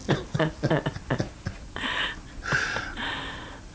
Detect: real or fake real